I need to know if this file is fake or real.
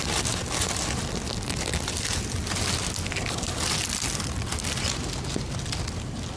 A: real